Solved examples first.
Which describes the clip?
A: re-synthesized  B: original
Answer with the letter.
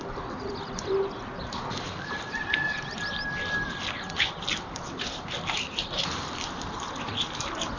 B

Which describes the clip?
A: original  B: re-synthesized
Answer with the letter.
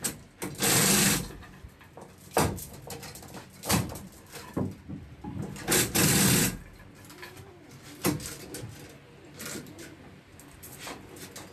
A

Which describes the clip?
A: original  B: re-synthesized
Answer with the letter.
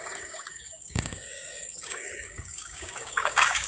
B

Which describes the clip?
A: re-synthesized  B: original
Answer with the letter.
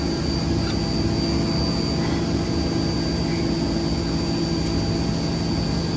B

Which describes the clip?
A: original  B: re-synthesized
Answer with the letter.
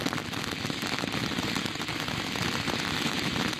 A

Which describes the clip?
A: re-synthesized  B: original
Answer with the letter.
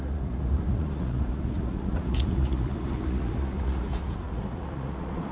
A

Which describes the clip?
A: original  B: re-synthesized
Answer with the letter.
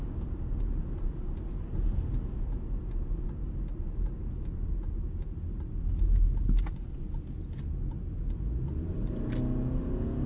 A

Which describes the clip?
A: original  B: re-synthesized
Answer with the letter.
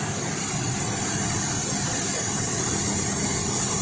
A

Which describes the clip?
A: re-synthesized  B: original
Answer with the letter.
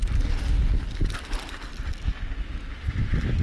B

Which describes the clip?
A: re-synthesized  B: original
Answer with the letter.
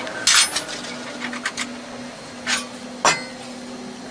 B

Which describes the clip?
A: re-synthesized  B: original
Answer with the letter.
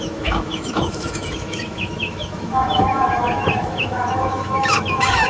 A